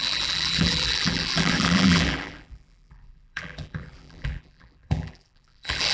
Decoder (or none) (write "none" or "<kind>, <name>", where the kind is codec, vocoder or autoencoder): vocoder, BigVGAN v2